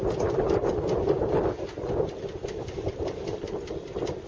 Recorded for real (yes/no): yes